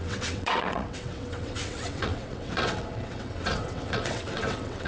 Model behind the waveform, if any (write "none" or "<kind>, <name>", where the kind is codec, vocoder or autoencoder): vocoder, WaveNeXt